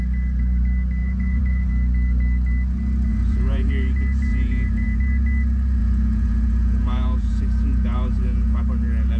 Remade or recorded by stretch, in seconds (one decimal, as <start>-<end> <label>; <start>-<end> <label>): 0.0-1.0 recorded; 1.0-1.7 remade; 1.7-3.1 recorded; 3.1-3.7 remade; 3.7-4.3 recorded; 4.3-5.0 remade; 5.0-5.8 recorded; 5.8-8.6 remade; 8.6-9.2 recorded